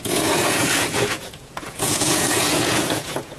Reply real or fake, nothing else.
fake